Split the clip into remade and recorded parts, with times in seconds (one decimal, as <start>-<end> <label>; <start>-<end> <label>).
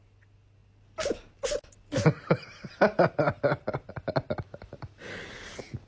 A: 0.0-5.9 recorded